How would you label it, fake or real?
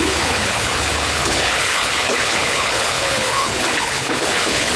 fake